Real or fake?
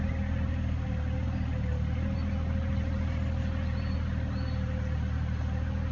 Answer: real